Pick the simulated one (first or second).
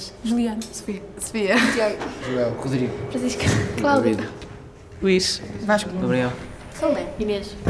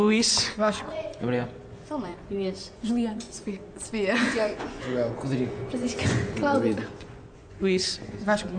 second